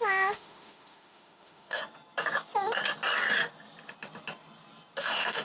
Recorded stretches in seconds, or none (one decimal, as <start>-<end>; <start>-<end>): 1.8-5.0